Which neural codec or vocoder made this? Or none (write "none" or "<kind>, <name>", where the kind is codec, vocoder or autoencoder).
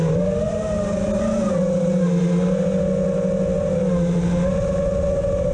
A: none